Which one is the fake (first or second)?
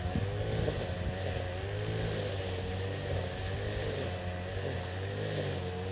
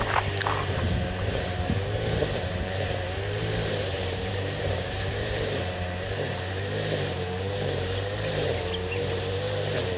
second